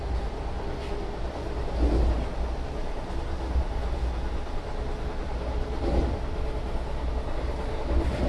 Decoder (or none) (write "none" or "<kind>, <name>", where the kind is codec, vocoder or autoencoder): none